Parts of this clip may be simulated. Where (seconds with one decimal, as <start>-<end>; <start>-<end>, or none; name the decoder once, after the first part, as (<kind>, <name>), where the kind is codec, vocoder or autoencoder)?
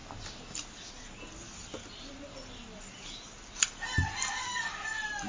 none